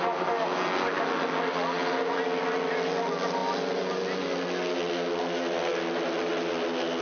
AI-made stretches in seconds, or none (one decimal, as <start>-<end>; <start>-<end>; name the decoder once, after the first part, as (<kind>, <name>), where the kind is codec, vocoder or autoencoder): none